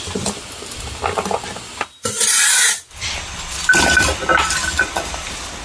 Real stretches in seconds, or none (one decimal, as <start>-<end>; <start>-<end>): 0.0-5.6